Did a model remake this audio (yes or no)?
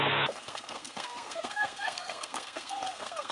yes